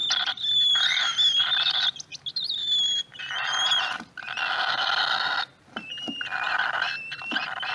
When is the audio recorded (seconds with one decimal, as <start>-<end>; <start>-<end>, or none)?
0.0-7.7